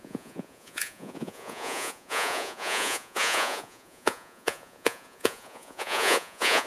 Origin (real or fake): fake